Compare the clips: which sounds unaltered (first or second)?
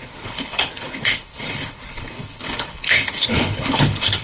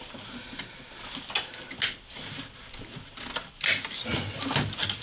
second